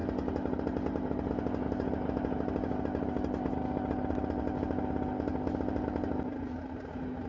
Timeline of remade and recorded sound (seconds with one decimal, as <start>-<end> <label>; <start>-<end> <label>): 0.0-7.3 recorded